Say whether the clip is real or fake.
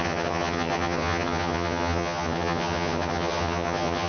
fake